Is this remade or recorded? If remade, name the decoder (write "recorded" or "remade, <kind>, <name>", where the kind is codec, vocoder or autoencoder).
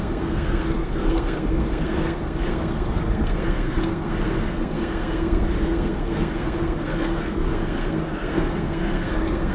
remade, codec, SNAC